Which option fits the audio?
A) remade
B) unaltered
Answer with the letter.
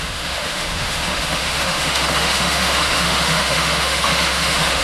A